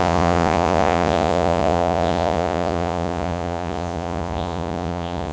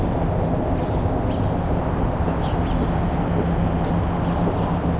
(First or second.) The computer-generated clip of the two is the first